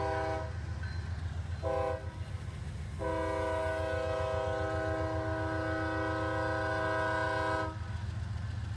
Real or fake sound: real